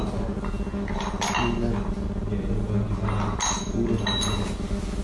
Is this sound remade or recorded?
recorded